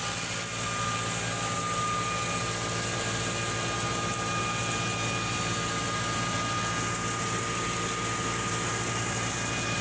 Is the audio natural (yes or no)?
yes